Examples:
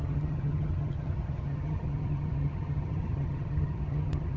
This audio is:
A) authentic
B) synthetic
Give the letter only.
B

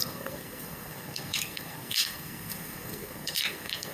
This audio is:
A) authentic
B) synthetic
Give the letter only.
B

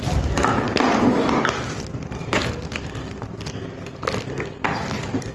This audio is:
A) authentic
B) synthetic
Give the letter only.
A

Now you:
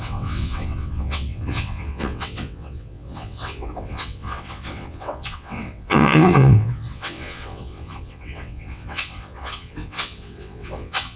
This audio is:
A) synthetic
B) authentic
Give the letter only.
A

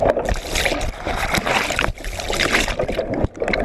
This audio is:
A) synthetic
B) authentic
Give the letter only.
B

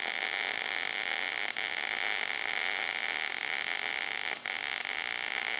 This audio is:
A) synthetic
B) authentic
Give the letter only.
B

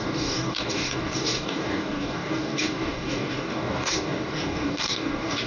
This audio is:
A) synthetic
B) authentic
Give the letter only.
A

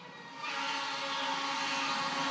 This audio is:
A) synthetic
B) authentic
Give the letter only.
B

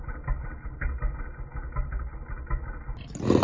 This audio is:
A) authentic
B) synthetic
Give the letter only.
A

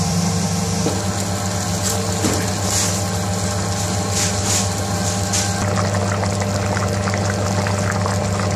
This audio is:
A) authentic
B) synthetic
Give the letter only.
A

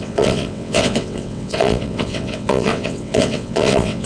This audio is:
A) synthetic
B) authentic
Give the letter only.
A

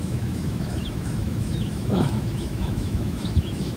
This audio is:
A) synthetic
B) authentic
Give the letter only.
A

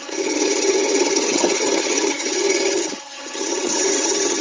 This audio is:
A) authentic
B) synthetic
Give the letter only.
B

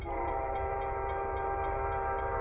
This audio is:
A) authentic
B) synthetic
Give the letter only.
B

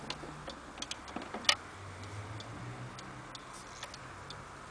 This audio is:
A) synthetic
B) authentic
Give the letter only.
B